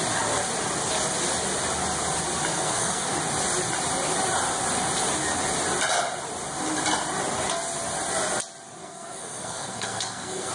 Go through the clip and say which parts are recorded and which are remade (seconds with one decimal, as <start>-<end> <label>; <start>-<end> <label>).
0.0-2.5 recorded; 2.5-3.1 remade; 3.1-8.8 recorded; 8.8-10.5 remade